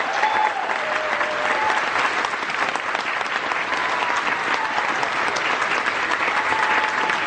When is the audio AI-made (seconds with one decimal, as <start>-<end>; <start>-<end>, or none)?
none